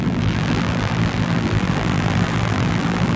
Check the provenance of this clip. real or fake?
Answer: fake